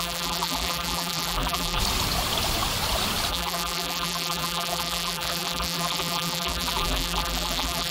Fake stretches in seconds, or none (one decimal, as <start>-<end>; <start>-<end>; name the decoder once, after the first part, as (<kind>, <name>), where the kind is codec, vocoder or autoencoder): 0.0-1.8 (vocoder, BigVGAN v2); 3.3-7.9